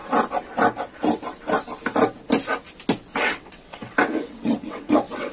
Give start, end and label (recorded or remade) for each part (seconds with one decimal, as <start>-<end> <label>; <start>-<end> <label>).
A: 0.0-3.2 recorded; 3.2-5.3 remade